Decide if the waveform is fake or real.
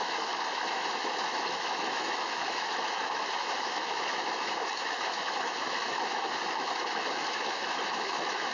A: fake